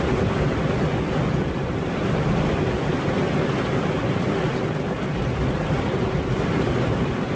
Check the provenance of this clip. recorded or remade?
recorded